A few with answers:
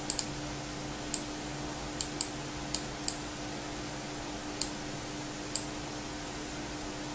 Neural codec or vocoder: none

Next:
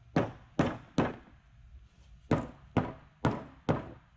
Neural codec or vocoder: none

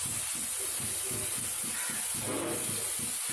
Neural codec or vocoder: none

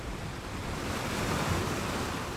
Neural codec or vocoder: vocoder, BigVGAN v2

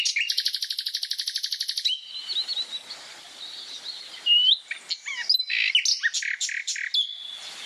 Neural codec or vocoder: none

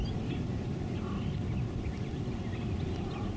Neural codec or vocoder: none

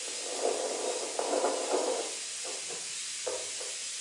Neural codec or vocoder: none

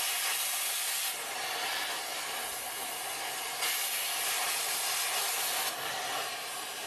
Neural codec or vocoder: none